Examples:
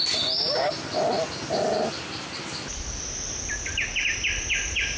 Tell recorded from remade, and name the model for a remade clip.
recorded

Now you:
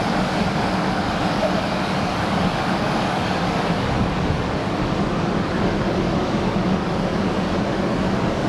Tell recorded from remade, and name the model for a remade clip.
remade, codec, DAC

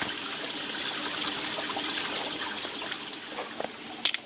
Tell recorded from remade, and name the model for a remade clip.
remade, vocoder, BigVGAN v2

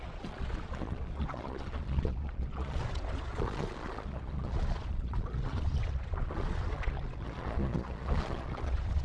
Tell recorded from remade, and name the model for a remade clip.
remade, vocoder, Vocos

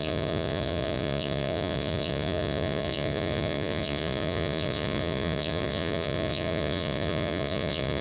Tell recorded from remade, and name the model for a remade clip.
remade, vocoder, Vocos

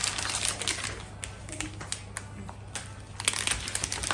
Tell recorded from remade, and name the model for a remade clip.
recorded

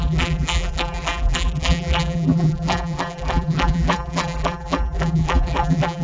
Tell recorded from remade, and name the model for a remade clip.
remade, vocoder, BigVGAN v2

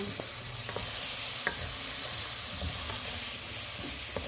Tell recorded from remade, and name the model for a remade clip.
recorded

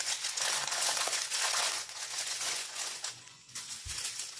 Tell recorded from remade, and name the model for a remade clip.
remade, vocoder, Vocos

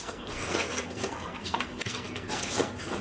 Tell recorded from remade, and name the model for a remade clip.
remade, codec, SNAC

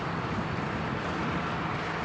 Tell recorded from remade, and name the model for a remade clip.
recorded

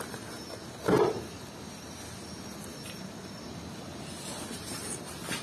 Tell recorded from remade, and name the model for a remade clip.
recorded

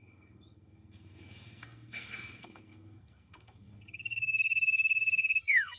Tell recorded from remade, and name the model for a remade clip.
remade, codec, SNAC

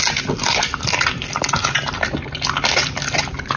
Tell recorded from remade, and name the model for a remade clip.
recorded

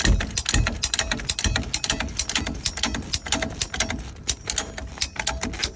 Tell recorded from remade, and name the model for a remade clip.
recorded